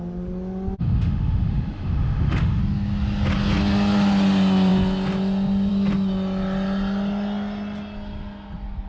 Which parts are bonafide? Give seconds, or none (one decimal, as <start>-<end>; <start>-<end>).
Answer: 0.0-0.8; 2.6-8.9